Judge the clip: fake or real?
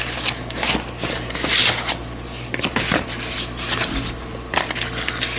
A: real